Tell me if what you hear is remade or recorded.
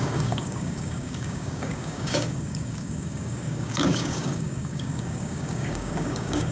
remade